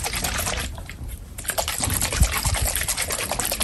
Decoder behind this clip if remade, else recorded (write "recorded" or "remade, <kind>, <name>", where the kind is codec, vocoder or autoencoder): recorded